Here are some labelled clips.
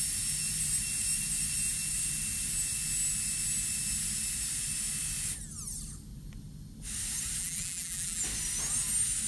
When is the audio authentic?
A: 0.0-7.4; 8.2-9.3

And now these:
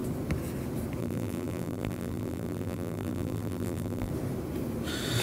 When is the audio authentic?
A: 0.0-1.0; 4.1-5.2